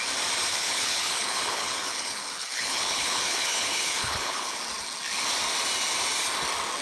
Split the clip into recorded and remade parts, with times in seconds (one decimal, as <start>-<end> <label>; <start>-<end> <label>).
0.0-0.5 recorded; 0.5-4.6 remade; 4.6-6.8 recorded